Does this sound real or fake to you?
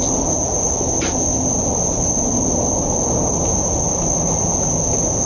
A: real